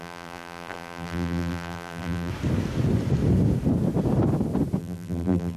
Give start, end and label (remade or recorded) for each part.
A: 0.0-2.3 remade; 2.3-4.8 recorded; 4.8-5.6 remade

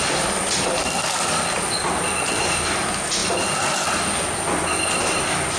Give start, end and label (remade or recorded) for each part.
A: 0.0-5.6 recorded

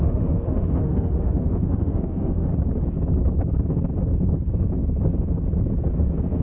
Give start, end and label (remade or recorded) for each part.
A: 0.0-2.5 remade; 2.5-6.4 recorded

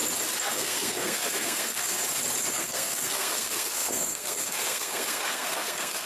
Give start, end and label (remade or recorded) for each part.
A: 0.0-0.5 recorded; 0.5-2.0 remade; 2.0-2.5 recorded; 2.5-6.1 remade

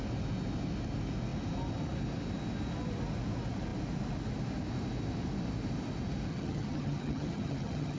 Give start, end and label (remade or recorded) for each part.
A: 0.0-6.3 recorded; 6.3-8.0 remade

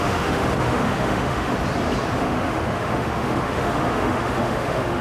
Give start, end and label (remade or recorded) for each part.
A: 0.0-1.5 remade; 1.5-2.2 recorded; 2.2-5.0 remade

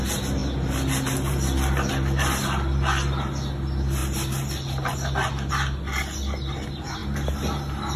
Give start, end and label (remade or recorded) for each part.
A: 0.0-8.0 recorded

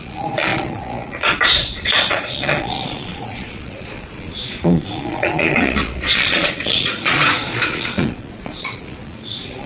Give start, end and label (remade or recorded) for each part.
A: 0.0-9.7 remade